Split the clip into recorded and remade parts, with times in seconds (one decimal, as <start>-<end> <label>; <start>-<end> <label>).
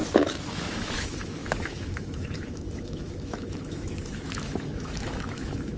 0.0-5.8 remade